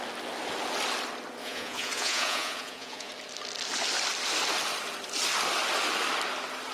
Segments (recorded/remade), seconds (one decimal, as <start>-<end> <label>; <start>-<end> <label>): 0.0-1.4 recorded; 1.4-3.1 remade; 3.1-6.7 recorded